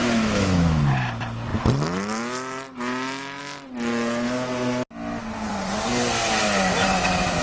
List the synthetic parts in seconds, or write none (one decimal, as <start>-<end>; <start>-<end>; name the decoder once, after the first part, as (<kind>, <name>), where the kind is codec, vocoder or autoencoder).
0.0-0.8 (autoencoder, DAC-VAE)